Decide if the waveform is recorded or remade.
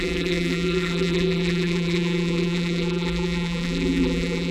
remade